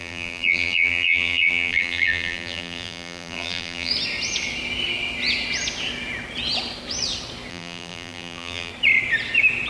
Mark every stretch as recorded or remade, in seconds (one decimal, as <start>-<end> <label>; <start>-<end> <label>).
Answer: 0.0-3.9 remade; 3.9-7.5 recorded; 7.5-8.7 remade; 8.7-9.7 recorded